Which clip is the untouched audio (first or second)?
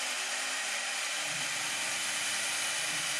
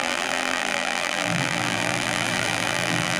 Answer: first